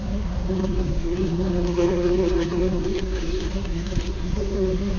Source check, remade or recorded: remade